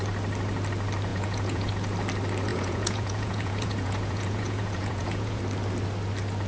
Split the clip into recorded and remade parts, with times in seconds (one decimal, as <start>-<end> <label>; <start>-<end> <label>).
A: 0.0-1.1 recorded; 1.1-1.7 remade; 1.7-2.5 recorded; 2.5-5.4 remade; 5.4-6.5 recorded